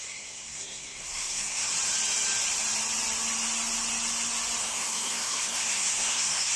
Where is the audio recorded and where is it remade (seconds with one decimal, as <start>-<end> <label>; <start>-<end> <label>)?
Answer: 0.0-1.7 remade; 1.7-4.6 recorded; 4.6-6.6 remade